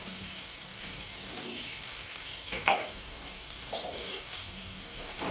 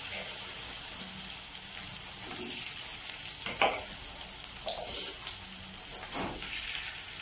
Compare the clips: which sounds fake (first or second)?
first